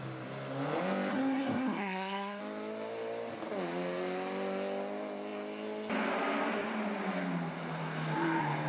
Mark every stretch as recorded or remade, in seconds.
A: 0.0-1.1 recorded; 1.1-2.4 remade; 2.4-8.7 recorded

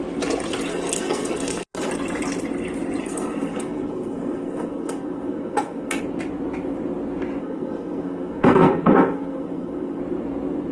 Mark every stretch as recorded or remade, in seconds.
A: 0.0-0.7 recorded; 0.7-1.9 remade; 1.9-3.0 recorded; 3.0-6.0 remade; 6.0-7.4 recorded; 7.4-10.0 remade; 10.0-10.7 recorded